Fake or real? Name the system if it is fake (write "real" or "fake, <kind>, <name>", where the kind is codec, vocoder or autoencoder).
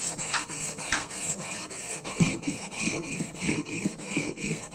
fake, codec, SNAC